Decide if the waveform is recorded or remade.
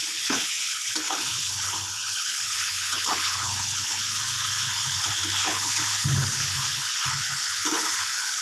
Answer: remade